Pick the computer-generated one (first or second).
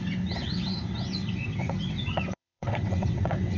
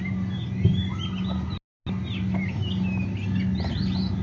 first